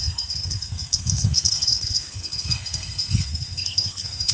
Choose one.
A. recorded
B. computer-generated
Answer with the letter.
B